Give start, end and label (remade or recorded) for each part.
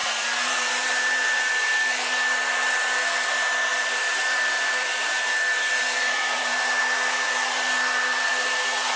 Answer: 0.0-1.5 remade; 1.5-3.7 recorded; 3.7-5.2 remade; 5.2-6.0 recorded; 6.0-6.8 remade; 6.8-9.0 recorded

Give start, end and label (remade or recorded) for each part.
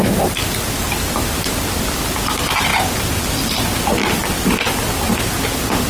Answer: 0.0-2.7 recorded; 2.7-4.9 remade; 4.9-5.9 recorded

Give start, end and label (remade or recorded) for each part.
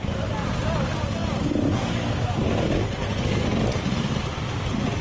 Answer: 0.0-5.0 recorded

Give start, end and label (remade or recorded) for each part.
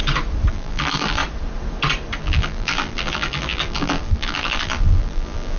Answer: 0.0-0.5 recorded; 0.5-1.2 remade; 1.2-2.2 recorded; 2.2-5.6 remade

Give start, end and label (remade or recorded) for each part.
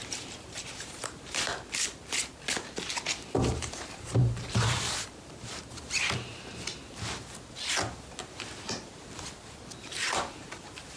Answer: 0.0-1.5 remade; 1.5-3.4 recorded; 3.4-6.3 remade; 6.3-9.8 recorded; 9.8-11.0 remade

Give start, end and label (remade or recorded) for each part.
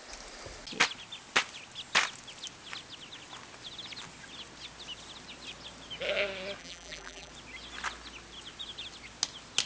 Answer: 0.0-6.6 recorded; 6.6-7.3 remade; 7.3-9.7 recorded